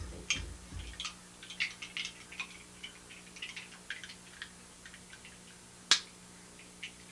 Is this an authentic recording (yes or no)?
yes